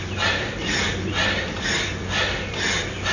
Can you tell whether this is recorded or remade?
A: recorded